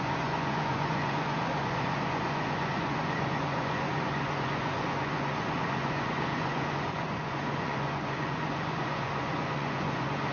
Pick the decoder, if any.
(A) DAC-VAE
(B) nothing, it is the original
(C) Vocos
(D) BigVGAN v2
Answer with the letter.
C